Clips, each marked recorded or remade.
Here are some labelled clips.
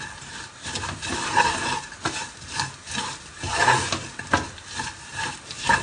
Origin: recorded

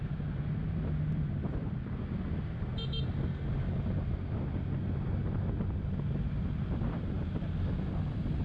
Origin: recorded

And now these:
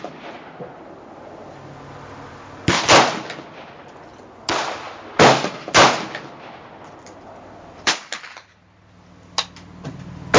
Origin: recorded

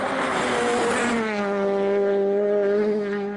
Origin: recorded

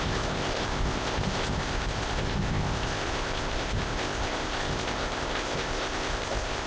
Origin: remade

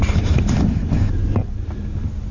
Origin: recorded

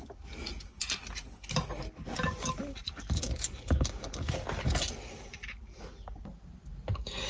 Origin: recorded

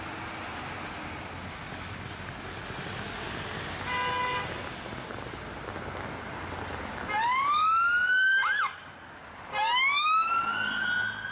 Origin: recorded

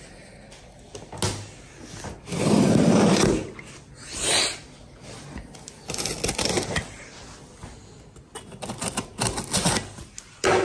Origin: recorded